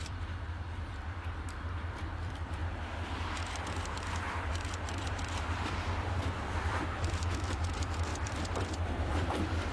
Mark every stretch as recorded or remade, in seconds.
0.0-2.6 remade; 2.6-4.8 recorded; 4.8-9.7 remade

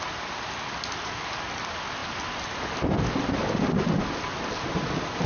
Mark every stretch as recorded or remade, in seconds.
0.0-5.3 recorded

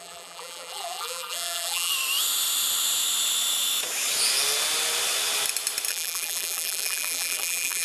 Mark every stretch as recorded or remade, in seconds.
0.0-1.9 remade; 1.9-5.9 recorded; 5.9-7.8 remade

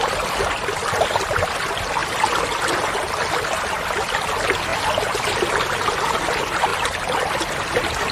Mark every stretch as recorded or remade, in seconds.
0.0-8.1 recorded

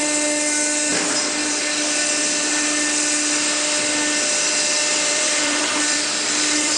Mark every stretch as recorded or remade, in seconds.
0.0-4.9 recorded; 4.9-6.8 remade

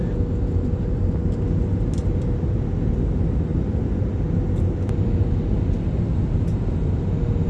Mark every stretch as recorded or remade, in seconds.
0.0-2.0 recorded; 2.0-3.0 remade; 3.0-7.5 recorded